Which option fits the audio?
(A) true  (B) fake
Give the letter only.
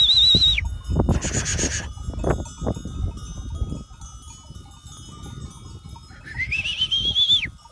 A